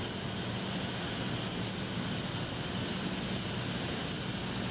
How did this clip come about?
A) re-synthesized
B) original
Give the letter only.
B